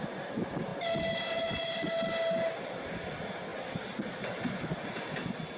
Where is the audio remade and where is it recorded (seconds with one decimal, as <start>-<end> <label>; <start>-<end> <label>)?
0.0-5.6 recorded